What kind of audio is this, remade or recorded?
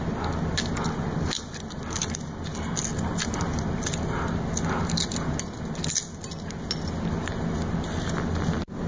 recorded